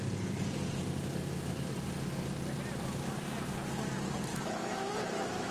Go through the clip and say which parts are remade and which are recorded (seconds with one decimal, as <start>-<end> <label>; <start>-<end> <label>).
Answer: 0.0-4.3 recorded; 4.3-5.5 remade